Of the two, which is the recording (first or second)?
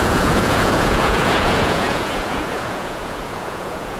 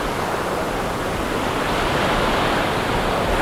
second